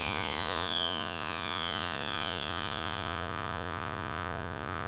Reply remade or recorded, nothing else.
remade